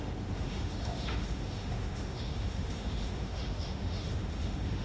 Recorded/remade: remade